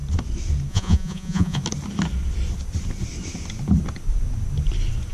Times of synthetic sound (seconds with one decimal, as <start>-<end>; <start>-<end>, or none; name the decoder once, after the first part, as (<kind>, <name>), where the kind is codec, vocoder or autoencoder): 0.7-1.6 (vocoder, Vocos)